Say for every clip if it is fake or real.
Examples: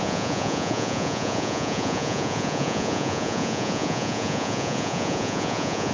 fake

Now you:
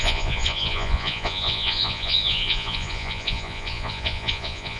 fake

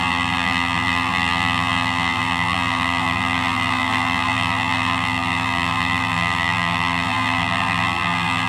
fake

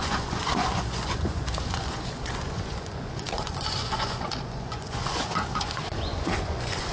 fake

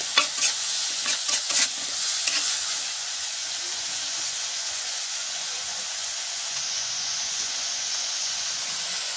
fake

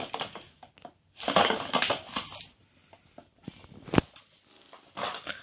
real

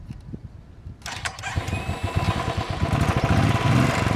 real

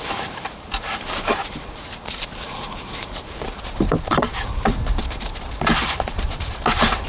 fake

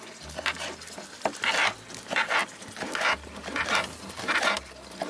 real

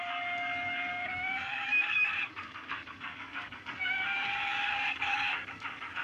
fake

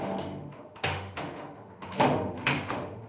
fake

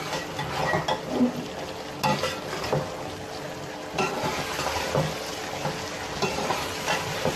real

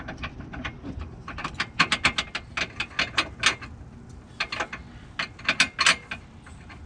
real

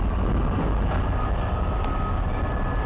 real